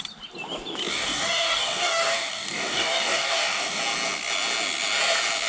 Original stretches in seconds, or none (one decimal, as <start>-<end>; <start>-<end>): 0.0-0.9; 3.8-5.5